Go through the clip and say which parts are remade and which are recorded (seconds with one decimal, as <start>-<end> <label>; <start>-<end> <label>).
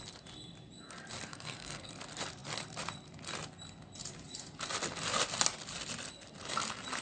0.0-1.3 recorded; 1.3-1.9 remade; 1.9-7.0 recorded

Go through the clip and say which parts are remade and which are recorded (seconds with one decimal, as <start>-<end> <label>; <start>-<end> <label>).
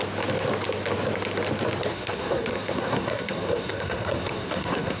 0.0-1.9 recorded; 1.9-5.0 remade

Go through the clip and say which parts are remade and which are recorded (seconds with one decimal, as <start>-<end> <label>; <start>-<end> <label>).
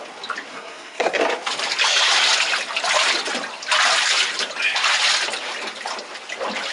0.0-0.5 recorded; 0.5-1.2 remade; 1.2-6.7 recorded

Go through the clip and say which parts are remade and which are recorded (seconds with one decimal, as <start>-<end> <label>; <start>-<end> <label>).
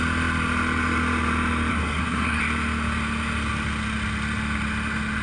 0.0-1.7 recorded; 1.7-2.4 remade; 2.4-5.2 recorded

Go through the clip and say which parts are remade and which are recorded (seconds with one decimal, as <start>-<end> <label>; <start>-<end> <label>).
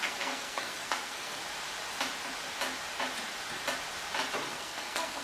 0.0-1.4 remade; 1.4-4.5 recorded; 4.5-5.2 remade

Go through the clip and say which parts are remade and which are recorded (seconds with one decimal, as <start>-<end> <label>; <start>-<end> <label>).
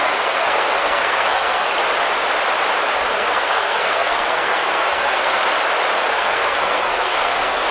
0.0-1.7 remade; 1.7-3.1 recorded; 3.1-5.4 remade; 5.4-6.1 recorded; 6.1-7.7 remade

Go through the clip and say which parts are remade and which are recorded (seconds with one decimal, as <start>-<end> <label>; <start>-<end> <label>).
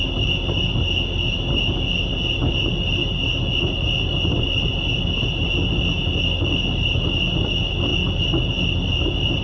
0.0-9.4 recorded